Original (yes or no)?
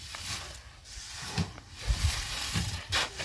yes